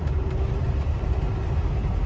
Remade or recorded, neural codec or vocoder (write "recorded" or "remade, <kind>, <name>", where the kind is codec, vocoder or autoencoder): remade, vocoder, BigVGAN v2